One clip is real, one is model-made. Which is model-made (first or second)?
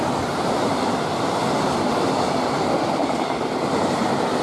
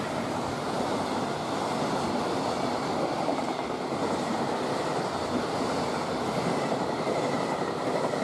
first